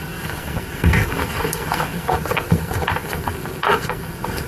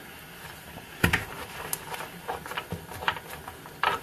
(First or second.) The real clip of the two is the second